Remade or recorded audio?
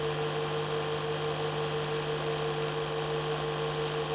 recorded